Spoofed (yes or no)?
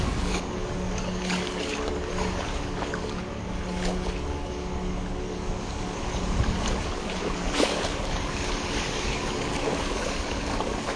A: yes